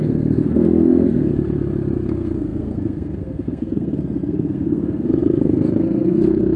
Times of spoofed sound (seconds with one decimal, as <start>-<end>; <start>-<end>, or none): 0.0-1.3; 2.1-6.6